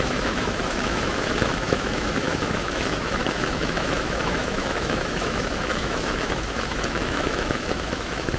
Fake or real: fake